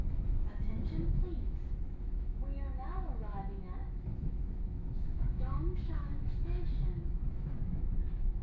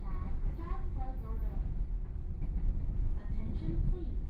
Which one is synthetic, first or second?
first